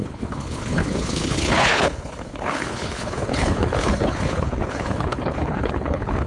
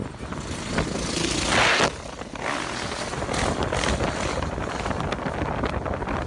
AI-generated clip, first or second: first